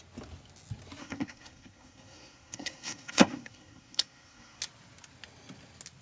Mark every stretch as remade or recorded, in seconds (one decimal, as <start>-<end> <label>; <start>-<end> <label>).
0.0-1.0 recorded; 1.0-4.6 remade; 4.6-6.0 recorded